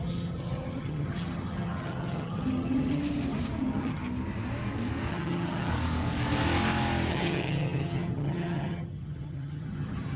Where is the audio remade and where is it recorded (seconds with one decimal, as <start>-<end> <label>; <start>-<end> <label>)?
0.0-3.0 remade; 3.0-3.6 recorded; 3.6-4.0 remade; 4.0-5.1 recorded; 5.1-5.7 remade; 5.7-7.1 recorded; 7.1-10.2 remade